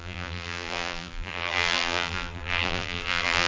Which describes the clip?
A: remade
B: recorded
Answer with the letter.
A